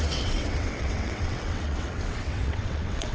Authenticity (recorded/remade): remade